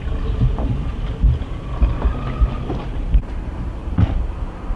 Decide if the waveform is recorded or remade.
recorded